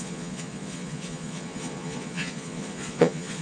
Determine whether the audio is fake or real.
fake